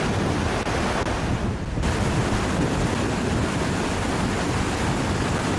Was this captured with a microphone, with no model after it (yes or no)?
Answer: yes